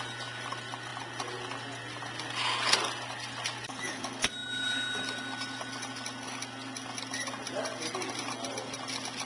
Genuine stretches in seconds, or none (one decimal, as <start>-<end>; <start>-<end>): 0.0-9.2